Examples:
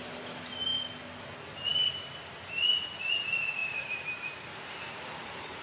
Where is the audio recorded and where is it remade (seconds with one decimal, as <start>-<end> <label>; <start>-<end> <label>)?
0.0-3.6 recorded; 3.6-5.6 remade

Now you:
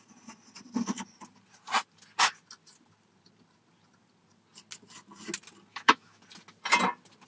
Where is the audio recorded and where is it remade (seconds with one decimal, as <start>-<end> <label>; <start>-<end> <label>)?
0.0-5.7 recorded; 5.7-6.2 remade; 6.2-7.3 recorded

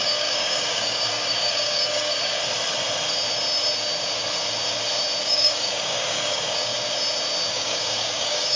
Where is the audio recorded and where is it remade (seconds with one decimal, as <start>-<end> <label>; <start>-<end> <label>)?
0.0-2.1 remade; 2.1-5.2 recorded; 5.2-6.7 remade; 6.7-7.5 recorded; 7.5-8.6 remade

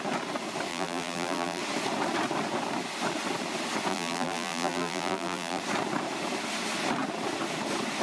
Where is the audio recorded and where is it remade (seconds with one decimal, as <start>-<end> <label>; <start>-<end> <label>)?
0.0-0.7 recorded; 0.7-1.6 remade; 1.6-3.9 recorded; 3.9-5.6 remade; 5.6-8.0 recorded